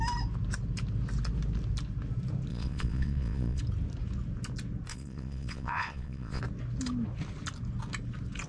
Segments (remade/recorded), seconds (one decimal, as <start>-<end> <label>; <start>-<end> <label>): 0.0-2.5 recorded; 2.5-3.6 remade; 3.6-4.9 recorded; 4.9-6.4 remade; 6.4-8.5 recorded